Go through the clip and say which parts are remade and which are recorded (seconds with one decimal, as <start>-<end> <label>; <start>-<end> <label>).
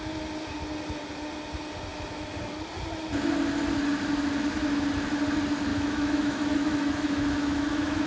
0.0-5.7 recorded; 5.7-8.1 remade